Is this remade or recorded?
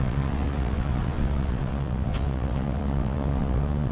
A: remade